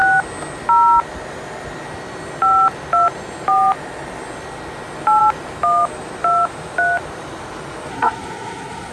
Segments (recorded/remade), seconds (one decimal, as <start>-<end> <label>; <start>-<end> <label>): 0.0-7.9 recorded; 7.9-8.9 remade